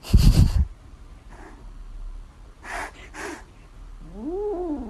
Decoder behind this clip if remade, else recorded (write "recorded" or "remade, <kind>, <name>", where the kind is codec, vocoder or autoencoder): recorded